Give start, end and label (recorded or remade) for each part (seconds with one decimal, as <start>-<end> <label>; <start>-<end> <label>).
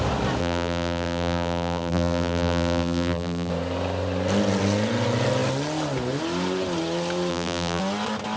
0.0-0.4 recorded; 0.4-3.5 remade; 3.5-7.3 recorded; 7.3-7.8 remade; 7.8-8.4 recorded